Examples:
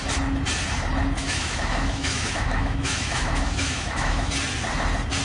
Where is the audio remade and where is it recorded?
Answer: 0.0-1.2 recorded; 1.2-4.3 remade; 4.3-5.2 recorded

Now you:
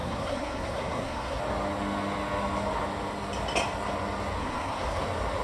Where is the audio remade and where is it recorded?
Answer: 0.0-1.4 remade; 1.4-4.4 recorded; 4.4-5.0 remade; 5.0-5.4 recorded

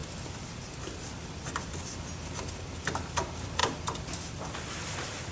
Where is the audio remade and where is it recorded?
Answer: 0.0-5.3 recorded